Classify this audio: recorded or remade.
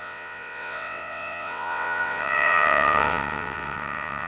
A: remade